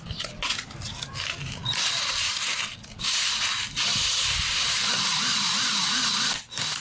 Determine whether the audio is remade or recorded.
recorded